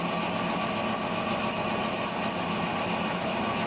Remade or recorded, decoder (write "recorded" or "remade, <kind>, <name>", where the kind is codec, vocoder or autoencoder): recorded